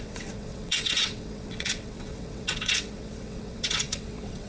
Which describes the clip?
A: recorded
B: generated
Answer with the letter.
B